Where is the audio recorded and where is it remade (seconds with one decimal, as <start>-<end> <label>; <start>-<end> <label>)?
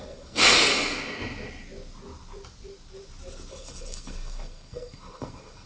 0.0-0.7 remade; 0.7-3.5 recorded; 3.5-5.7 remade